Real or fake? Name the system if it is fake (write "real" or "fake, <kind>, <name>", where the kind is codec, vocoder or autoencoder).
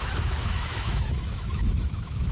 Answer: fake, autoencoder, DAC-VAE